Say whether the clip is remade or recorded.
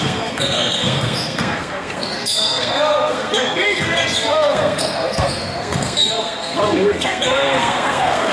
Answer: remade